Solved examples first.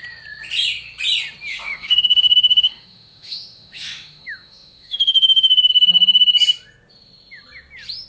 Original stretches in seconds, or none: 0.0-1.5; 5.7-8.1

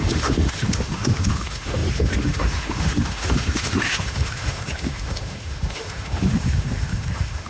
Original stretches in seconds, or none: none